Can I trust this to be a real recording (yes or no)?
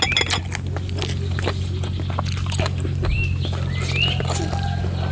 yes